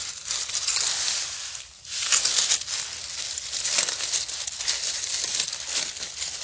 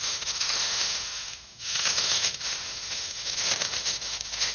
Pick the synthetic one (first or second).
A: second